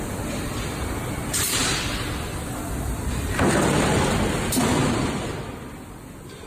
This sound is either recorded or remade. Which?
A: recorded